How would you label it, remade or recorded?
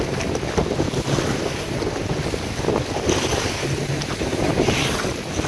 recorded